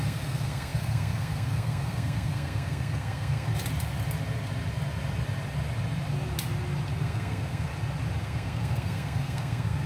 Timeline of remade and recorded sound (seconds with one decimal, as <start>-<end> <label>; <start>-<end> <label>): 0.0-3.5 remade; 3.5-7.0 recorded; 7.0-7.7 remade; 7.7-8.2 recorded; 8.2-9.9 remade